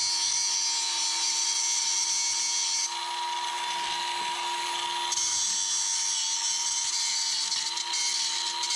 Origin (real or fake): real